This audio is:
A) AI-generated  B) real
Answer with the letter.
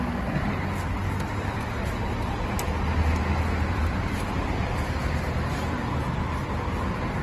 B